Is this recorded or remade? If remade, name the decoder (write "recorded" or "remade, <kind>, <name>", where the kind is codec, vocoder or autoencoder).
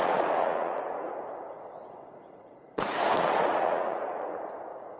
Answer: remade, vocoder, Vocos